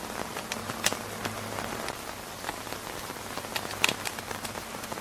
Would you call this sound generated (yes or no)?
no